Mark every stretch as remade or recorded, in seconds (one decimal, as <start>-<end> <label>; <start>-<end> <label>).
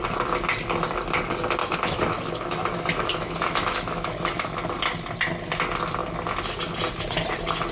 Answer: 0.0-1.6 recorded; 1.6-4.7 remade; 4.7-7.7 recorded